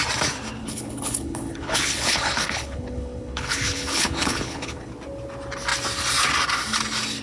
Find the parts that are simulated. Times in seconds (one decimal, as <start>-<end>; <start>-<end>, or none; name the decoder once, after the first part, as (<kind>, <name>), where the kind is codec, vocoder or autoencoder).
0.6-4.9 (codec, HILCodec)